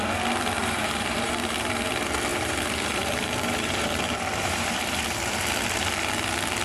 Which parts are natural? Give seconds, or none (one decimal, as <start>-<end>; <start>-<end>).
0.0-0.6; 1.9-2.3; 5.4-6.6